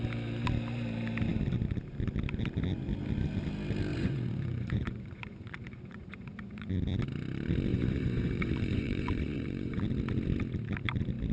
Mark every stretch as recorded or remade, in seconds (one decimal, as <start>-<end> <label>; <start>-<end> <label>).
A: 0.0-3.9 recorded; 3.9-6.7 remade; 6.7-7.7 recorded; 7.7-9.8 remade; 9.8-11.3 recorded

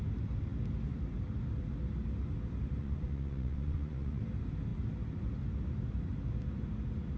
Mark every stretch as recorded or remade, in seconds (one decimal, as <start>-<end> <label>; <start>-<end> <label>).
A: 0.0-2.8 recorded; 2.8-4.2 remade; 4.2-7.2 recorded

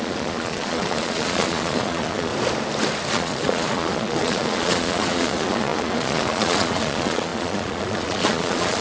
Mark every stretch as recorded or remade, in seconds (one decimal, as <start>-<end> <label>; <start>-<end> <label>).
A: 0.0-2.3 remade; 2.3-3.1 recorded; 3.1-8.8 remade

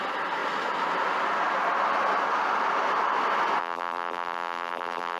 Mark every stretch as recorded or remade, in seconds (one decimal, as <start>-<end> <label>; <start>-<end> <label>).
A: 0.0-3.6 recorded; 3.6-5.2 remade

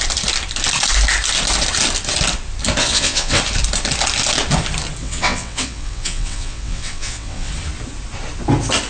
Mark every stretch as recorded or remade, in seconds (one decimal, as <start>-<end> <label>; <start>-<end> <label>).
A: 0.0-2.8 recorded; 2.8-3.4 remade; 3.4-5.0 recorded; 5.0-7.5 remade; 7.5-8.9 recorded

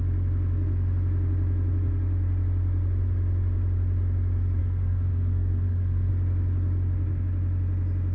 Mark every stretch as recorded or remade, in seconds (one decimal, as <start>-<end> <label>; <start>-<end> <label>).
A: 0.0-4.6 recorded; 4.6-6.1 remade; 6.1-8.1 recorded